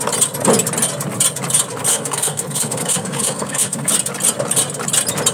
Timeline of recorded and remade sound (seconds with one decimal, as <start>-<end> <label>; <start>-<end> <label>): 0.0-1.9 recorded; 1.9-3.9 remade; 3.9-5.3 recorded